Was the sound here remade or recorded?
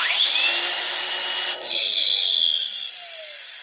recorded